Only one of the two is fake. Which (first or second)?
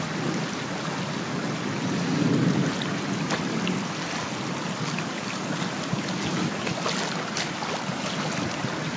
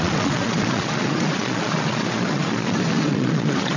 second